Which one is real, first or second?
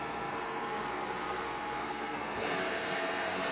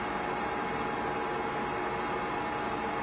second